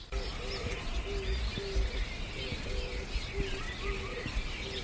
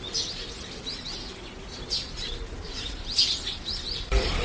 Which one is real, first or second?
first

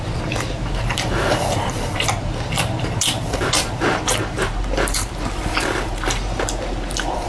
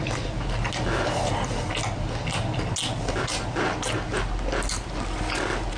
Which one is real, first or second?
second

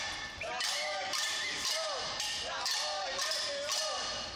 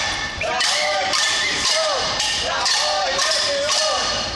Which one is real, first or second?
first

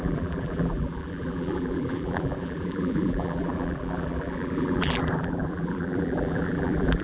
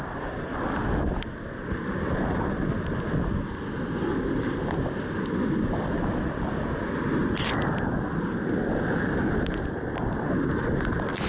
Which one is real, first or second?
second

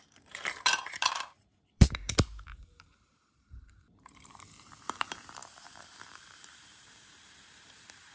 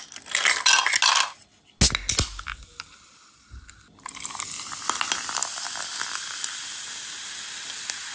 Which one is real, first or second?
second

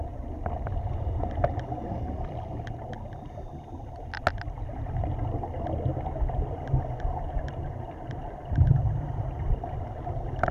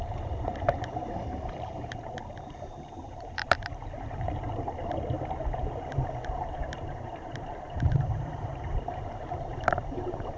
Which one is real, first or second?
first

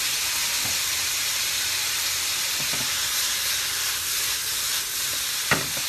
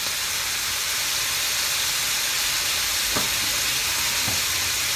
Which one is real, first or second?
second